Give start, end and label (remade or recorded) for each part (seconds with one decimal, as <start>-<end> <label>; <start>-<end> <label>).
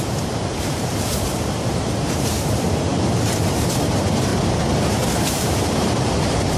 0.0-4.3 remade; 4.3-4.9 recorded; 4.9-6.6 remade